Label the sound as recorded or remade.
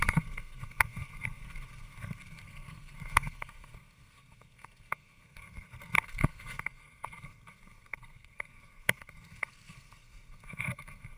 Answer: remade